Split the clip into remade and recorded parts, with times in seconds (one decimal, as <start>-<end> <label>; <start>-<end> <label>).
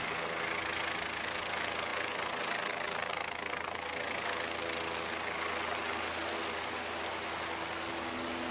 0.0-8.5 recorded